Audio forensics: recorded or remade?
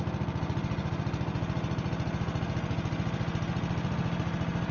recorded